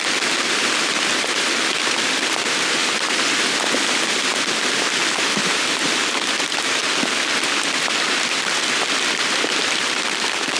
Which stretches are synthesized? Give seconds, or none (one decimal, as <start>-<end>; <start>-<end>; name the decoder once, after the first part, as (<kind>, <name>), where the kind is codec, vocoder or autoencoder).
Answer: 5.4-6.4 (vocoder, BigVGAN v2)